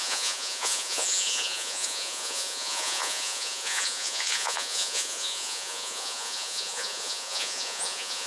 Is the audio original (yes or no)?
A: no